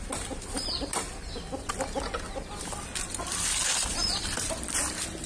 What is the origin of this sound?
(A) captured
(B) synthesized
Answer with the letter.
A